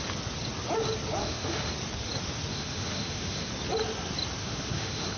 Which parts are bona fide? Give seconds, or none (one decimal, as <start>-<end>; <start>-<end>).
0.0-1.2; 1.7-2.5; 3.5-4.4